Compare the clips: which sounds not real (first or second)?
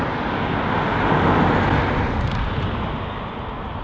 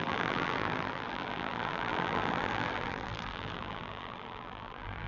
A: second